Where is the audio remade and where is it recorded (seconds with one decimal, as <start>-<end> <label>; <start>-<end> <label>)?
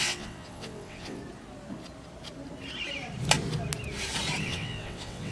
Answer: 0.0-1.2 remade; 1.2-4.4 recorded; 4.4-5.3 remade